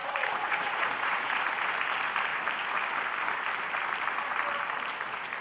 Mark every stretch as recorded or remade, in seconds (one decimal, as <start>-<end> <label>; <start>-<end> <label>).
0.0-1.4 remade; 1.4-5.4 recorded

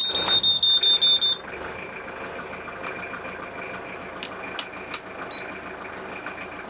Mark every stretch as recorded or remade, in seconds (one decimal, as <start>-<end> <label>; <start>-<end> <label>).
0.0-6.7 recorded

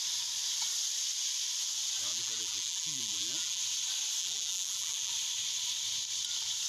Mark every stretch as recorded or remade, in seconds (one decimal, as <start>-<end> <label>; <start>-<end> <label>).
0.0-2.1 recorded; 2.1-3.6 remade; 3.6-4.2 recorded; 4.2-5.1 remade; 5.1-6.7 recorded

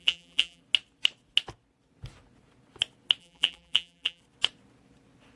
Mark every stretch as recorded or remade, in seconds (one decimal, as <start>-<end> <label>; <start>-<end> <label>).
0.0-0.6 remade; 0.6-3.2 recorded; 3.2-4.2 remade; 4.2-5.4 recorded

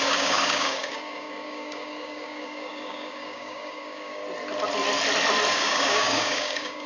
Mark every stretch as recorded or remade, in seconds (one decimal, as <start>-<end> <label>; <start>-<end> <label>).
0.0-4.2 remade; 4.2-5.5 recorded; 5.5-6.9 remade

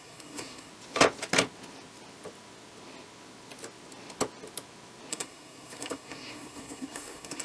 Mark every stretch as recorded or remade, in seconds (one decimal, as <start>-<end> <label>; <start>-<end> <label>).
0.0-0.7 remade; 0.7-5.1 recorded; 5.1-7.4 remade

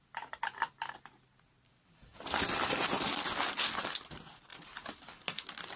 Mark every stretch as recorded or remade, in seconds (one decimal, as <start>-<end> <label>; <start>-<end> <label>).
0.0-5.8 recorded